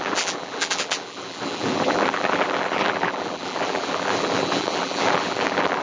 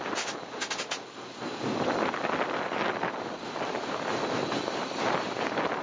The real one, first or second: second